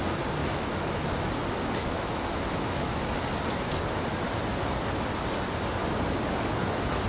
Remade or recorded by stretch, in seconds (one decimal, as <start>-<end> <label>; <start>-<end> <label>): 0.0-0.4 recorded; 0.4-1.3 remade; 1.3-1.8 recorded; 1.8-3.2 remade; 3.2-7.1 recorded